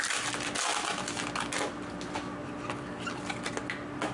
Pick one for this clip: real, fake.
real